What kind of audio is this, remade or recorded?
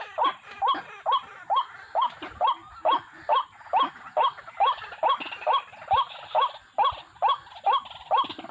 recorded